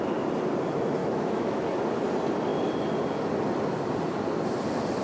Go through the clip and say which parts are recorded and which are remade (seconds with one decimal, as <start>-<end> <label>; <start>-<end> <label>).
0.0-1.0 recorded; 1.0-1.6 remade; 1.6-5.0 recorded